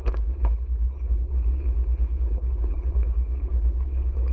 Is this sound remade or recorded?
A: remade